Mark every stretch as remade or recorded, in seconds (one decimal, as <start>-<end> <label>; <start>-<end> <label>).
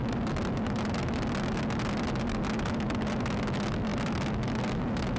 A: 0.0-5.2 recorded